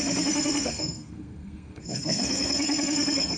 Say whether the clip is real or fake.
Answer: fake